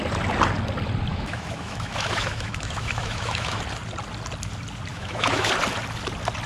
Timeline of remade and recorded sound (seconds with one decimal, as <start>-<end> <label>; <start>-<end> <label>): 0.0-1.1 recorded; 1.1-3.6 remade; 3.6-4.9 recorded; 4.9-5.5 remade; 5.5-6.5 recorded